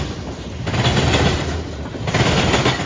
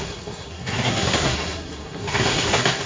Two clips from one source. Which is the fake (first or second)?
second